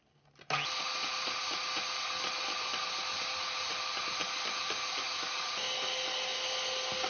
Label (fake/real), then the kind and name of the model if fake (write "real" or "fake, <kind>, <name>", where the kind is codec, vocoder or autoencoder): real